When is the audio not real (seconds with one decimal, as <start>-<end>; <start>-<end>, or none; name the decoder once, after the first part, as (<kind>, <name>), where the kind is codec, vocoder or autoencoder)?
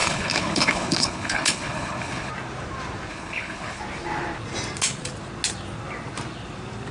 0.0-2.3 (codec, HILCodec); 3.1-3.8